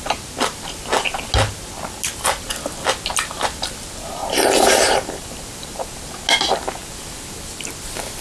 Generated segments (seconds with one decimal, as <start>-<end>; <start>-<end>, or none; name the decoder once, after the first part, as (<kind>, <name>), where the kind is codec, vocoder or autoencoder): 4.2-6.1 (vocoder, BigVGAN v2); 6.8-7.6